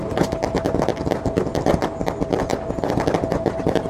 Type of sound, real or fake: real